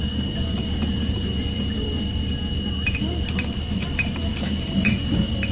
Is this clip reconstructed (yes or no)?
yes